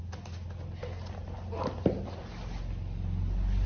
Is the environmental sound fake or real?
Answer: real